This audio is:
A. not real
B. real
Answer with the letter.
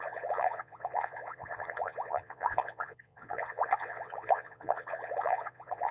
A